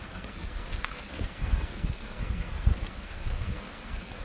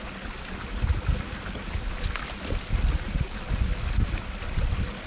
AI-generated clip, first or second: first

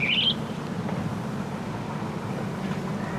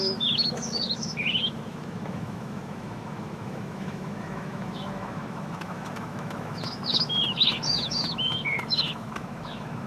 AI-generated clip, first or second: second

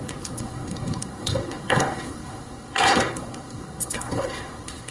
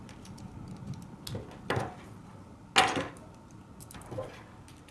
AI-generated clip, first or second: first